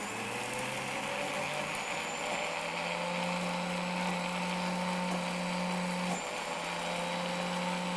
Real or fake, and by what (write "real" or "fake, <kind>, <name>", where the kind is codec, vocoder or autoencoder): real